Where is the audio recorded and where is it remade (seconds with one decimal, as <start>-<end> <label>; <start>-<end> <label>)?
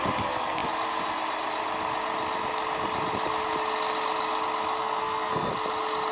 0.0-4.8 recorded; 4.8-5.5 remade; 5.5-6.1 recorded